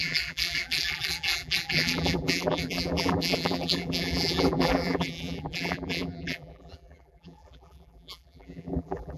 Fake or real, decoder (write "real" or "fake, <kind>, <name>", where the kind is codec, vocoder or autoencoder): fake, vocoder, BigVGAN v2